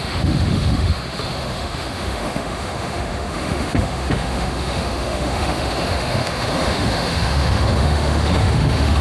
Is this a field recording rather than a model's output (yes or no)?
no